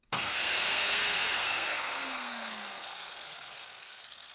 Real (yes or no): no